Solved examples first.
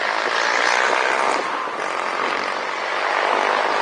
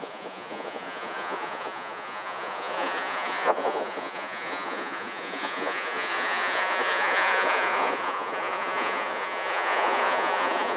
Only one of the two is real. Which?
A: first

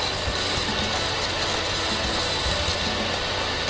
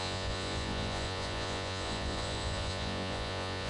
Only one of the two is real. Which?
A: first